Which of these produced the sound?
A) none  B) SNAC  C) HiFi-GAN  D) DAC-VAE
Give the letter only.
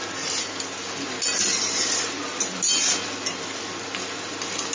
A